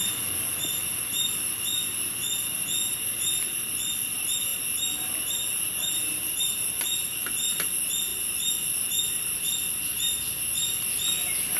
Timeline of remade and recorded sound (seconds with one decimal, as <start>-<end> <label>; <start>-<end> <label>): 0.0-1.1 remade; 1.1-2.4 recorded; 2.4-11.6 remade